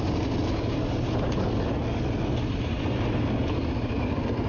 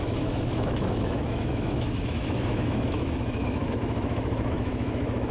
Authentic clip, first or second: first